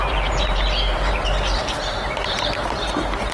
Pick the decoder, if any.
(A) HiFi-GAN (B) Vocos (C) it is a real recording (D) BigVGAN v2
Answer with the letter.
D